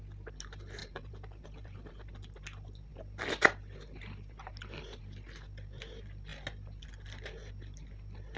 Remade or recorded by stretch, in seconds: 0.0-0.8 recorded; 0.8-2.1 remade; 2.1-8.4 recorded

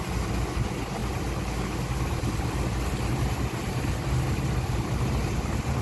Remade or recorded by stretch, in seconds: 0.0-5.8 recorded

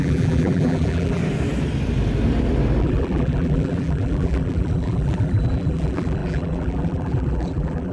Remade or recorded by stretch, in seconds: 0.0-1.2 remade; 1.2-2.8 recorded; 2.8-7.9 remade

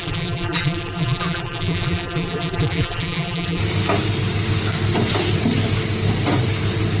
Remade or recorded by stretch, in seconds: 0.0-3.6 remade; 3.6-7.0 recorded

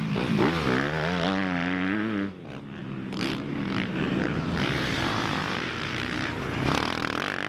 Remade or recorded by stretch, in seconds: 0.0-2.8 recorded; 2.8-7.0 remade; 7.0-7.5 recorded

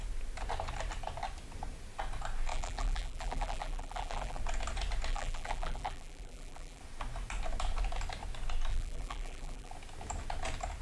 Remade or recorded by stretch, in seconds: 0.0-2.5 recorded; 2.5-4.4 remade; 4.4-5.1 recorded; 5.1-6.8 remade; 6.8-8.7 recorded; 8.7-9.7 remade; 9.7-10.8 recorded